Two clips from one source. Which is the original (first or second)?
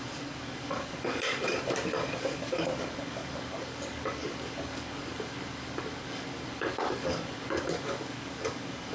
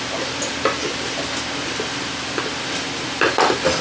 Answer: second